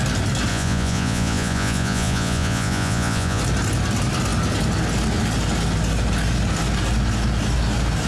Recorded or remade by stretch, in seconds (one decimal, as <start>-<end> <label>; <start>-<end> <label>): 0.0-0.5 recorded; 0.5-3.4 remade; 3.4-8.1 recorded